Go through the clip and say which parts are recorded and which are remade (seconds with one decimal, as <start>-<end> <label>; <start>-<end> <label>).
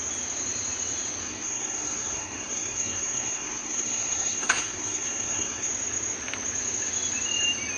0.0-1.2 recorded; 1.2-5.7 remade; 5.7-7.8 recorded